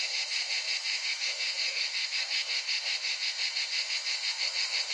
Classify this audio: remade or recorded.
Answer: remade